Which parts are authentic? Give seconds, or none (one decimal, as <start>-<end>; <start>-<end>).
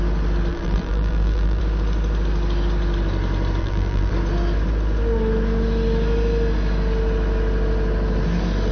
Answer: 0.0-0.5; 1.6-3.6; 4.1-8.7